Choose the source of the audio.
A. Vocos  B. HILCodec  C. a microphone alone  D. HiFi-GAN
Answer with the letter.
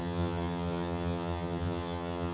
D